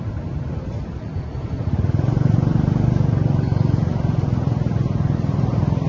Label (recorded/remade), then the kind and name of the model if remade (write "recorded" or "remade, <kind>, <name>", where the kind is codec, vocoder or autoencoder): remade, vocoder, BigVGAN v2